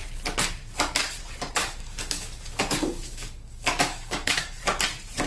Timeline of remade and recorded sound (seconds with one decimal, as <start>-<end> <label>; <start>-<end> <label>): 0.0-1.6 recorded; 1.6-4.6 remade; 4.6-5.3 recorded